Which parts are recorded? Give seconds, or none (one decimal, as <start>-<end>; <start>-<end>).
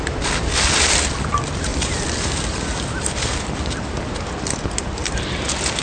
0.0-5.8